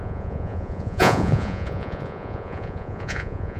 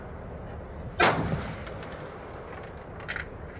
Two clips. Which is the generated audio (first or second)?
first